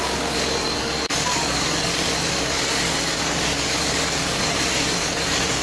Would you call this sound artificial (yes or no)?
yes